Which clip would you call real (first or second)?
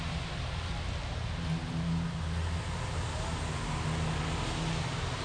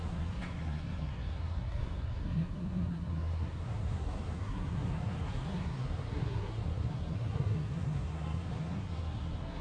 first